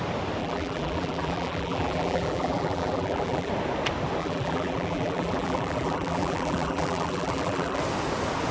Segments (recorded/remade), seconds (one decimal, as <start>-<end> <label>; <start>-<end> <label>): 0.0-0.4 recorded; 0.4-3.5 remade; 3.5-4.2 recorded; 4.2-7.8 remade; 7.8-8.5 recorded